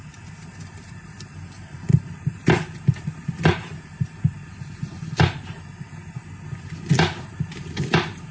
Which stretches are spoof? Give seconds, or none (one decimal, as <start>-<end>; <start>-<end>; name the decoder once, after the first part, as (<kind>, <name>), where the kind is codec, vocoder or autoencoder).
none